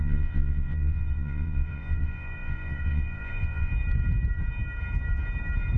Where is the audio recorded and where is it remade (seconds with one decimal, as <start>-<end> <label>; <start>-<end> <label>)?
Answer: 0.0-3.7 remade; 3.7-5.8 recorded